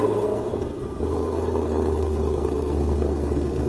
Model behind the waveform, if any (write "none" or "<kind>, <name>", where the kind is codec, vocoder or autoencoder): codec, SNAC